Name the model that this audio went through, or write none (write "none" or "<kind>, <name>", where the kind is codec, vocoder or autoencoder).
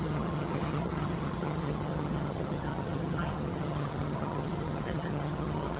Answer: vocoder, HiFi-GAN